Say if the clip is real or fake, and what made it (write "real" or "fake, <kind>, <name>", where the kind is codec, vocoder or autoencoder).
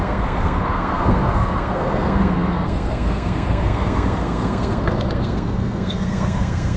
fake, codec, SNAC